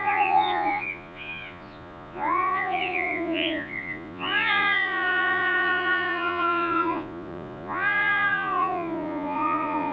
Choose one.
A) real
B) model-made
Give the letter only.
B